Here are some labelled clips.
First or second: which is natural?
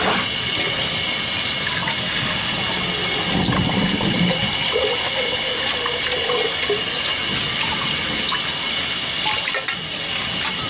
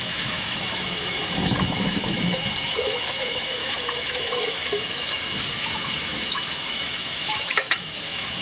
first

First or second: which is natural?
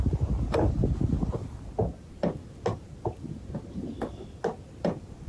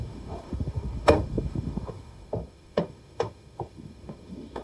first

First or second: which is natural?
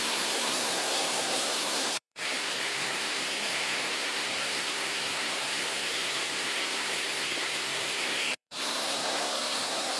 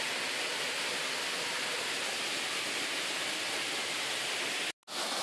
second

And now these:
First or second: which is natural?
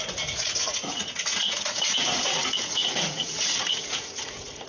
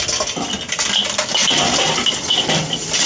second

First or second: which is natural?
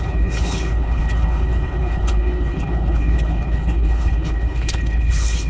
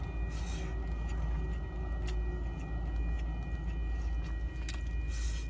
second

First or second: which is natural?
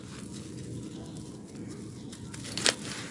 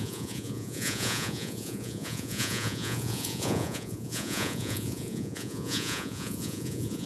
first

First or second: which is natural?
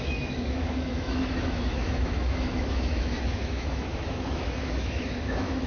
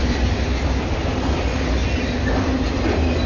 second